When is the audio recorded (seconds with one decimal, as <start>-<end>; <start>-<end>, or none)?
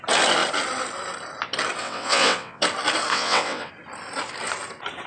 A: 0.0-1.8; 2.6-3.1; 3.7-5.1